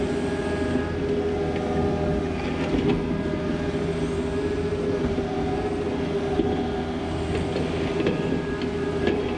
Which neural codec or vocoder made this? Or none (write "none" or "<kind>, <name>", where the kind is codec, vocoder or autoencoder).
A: none